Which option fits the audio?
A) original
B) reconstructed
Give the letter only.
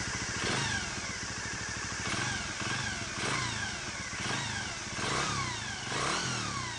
A